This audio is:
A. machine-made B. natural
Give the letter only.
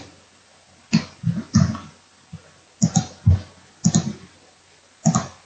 B